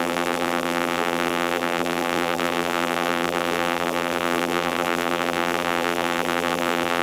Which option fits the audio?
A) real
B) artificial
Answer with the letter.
B